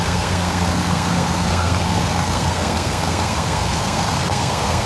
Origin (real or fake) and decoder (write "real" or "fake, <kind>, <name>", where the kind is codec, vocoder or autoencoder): fake, codec, SNAC